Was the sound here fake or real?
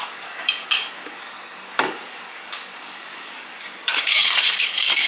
fake